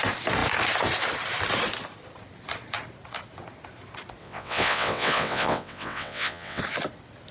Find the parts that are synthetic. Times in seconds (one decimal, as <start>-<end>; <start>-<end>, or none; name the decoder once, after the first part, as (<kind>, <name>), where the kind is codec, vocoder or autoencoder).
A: 4.2-6.6 (vocoder, WaveNeXt)